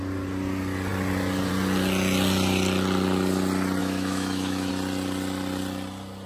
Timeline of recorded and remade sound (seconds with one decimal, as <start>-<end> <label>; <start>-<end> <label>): 0.0-3.8 recorded; 3.8-4.7 remade; 4.7-6.3 recorded